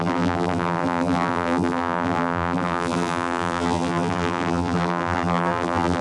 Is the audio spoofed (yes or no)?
yes